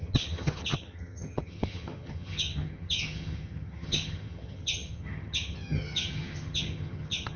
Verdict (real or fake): fake